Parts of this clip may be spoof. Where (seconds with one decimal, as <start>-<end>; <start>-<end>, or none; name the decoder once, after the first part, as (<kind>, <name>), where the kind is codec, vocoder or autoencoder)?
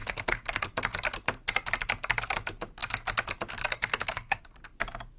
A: 0.0-0.6 (codec, SNAC); 3.9-4.4